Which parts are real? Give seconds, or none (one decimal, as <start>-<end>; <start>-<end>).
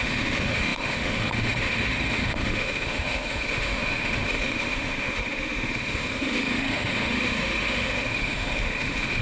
none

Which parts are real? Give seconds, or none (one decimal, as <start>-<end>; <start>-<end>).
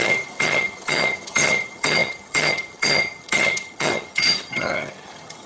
none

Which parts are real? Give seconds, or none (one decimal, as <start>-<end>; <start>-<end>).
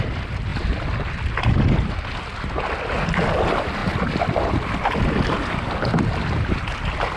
0.0-7.2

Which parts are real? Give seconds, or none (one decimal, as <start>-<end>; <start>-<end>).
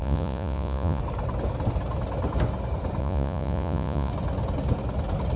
1.0-3.0; 4.1-5.4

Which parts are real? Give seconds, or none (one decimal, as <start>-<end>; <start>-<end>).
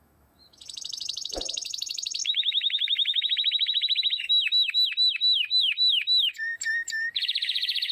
none